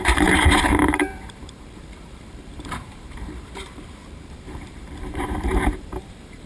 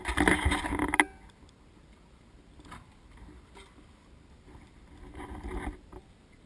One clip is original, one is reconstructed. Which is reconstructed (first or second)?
first